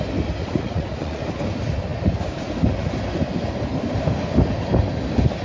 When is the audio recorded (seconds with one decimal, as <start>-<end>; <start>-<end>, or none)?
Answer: 0.0-0.4; 1.2-5.4